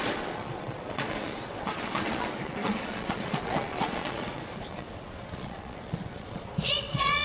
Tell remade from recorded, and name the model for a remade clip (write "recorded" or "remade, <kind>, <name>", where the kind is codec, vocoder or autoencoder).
remade, vocoder, Vocos